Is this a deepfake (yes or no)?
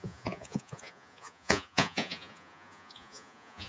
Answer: yes